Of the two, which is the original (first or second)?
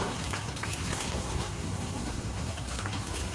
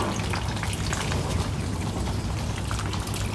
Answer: second